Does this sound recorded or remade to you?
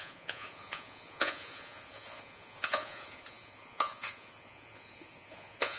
remade